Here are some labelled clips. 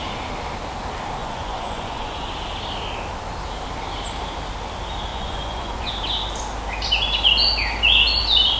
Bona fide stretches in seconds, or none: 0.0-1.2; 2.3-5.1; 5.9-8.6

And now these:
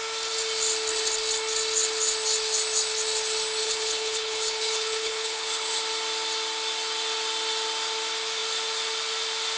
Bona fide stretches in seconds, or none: 0.0-3.6; 5.8-9.6

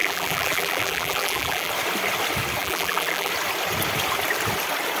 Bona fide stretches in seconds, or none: 1.7-2.6; 3.3-5.0

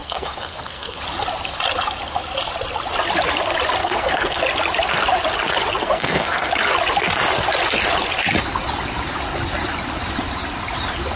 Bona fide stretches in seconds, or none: 1.0-3.8; 4.4-5.8; 6.5-11.2

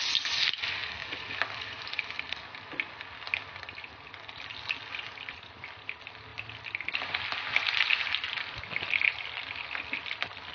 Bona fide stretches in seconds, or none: 0.0-10.5

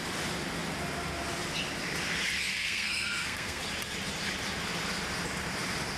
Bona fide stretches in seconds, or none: 0.0-2.5; 3.6-6.0

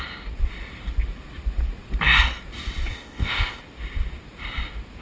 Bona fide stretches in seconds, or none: 0.0-2.9; 3.6-5.0

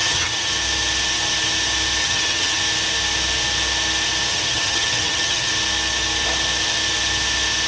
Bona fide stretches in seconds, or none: 0.5-2.0; 2.6-4.3; 5.5-7.7